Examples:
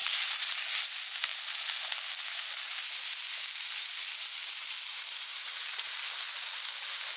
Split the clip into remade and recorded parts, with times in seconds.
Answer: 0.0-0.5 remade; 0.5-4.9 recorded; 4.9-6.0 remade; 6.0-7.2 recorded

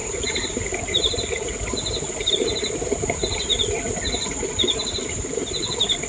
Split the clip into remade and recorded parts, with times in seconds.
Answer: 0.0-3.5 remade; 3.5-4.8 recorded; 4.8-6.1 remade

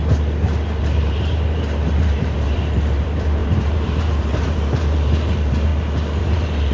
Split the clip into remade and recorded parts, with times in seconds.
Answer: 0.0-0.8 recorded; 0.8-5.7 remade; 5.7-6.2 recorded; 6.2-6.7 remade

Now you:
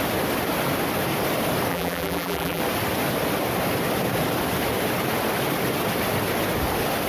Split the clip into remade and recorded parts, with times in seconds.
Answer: 0.0-1.7 recorded; 1.7-2.6 remade; 2.6-7.1 recorded

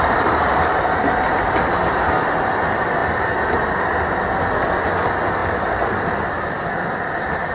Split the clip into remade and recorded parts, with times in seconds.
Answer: 0.0-5.4 recorded; 5.4-7.1 remade; 7.1-7.5 recorded

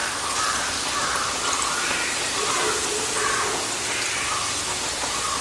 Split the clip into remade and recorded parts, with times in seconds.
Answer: 0.0-3.0 remade; 3.0-5.4 recorded